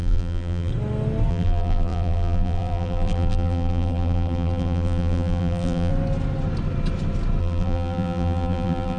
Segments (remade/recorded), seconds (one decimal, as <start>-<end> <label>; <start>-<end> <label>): 0.0-0.7 remade; 0.7-1.3 recorded; 1.3-5.9 remade; 5.9-7.4 recorded; 7.4-9.0 remade